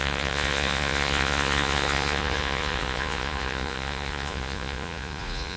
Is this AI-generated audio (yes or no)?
yes